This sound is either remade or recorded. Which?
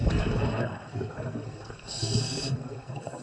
remade